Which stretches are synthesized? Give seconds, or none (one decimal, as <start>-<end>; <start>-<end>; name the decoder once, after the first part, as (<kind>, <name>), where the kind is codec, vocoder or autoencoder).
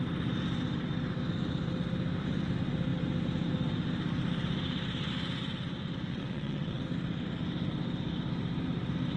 6.1-6.8 (vocoder, WaveNeXt)